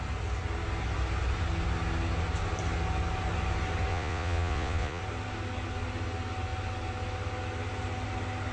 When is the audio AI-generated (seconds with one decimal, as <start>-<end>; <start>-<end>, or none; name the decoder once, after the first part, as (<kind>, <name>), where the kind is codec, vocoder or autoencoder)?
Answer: 3.9-5.0 (vocoder, Vocos)